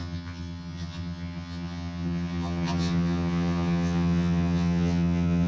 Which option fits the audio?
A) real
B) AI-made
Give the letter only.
B